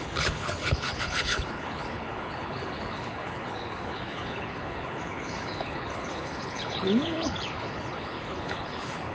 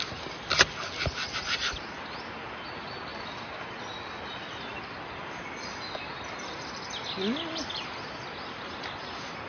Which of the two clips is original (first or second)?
second